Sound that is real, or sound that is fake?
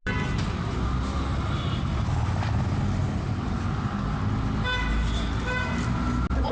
real